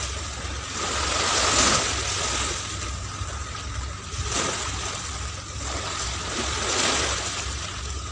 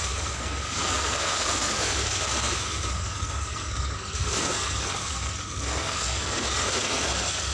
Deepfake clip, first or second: second